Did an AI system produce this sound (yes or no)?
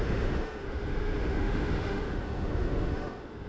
yes